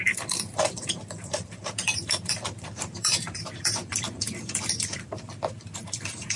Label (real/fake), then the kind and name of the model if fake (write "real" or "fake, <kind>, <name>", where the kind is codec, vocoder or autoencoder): fake, vocoder, BigVGAN v2